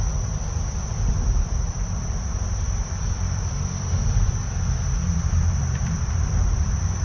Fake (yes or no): yes